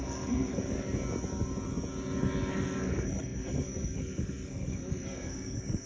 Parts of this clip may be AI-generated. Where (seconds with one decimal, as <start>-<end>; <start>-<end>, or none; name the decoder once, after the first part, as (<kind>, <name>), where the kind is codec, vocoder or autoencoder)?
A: 0.0-0.6 (codec, SNAC); 2.5-5.9